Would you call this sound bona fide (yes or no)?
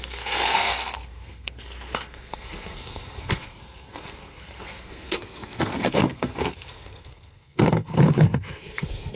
no